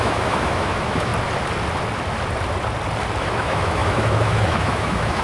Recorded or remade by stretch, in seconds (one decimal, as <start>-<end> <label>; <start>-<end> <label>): 0.0-1.1 remade; 1.1-3.2 recorded; 3.2-5.2 remade